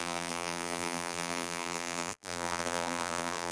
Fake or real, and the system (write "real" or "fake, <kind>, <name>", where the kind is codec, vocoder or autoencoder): fake, vocoder, BigVGAN v2